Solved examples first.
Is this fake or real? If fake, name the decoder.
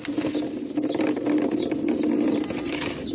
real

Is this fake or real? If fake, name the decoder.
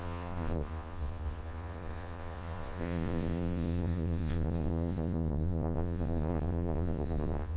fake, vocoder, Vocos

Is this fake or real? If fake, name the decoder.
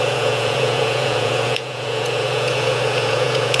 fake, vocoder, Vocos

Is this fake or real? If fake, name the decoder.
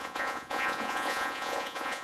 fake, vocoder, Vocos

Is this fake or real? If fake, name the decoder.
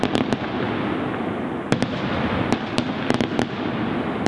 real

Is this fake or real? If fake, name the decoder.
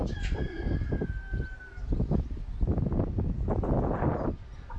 real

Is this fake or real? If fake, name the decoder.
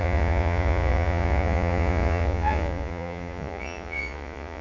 fake, vocoder, Vocos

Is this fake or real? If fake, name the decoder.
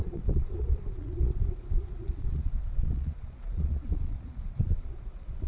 fake, vocoder, Vocos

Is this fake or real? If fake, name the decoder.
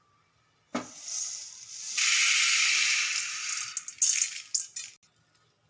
real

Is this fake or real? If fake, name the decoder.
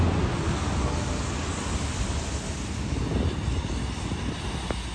real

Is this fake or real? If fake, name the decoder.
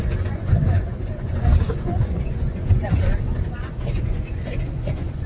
fake, vocoder, Vocos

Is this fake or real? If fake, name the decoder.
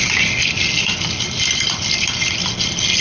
real